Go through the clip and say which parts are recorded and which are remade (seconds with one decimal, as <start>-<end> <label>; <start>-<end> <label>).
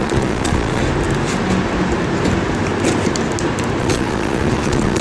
0.0-0.8 remade; 0.8-3.8 recorded; 3.8-5.0 remade